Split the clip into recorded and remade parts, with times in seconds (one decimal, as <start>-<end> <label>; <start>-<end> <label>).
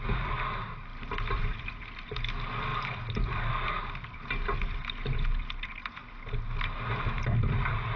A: 0.0-8.0 recorded